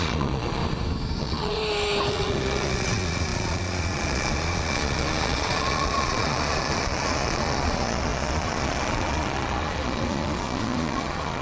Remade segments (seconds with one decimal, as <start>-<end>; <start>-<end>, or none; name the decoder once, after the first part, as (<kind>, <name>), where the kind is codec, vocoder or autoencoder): 0.0-0.6 (vocoder, Vocos); 1.2-1.6; 2.1-11.4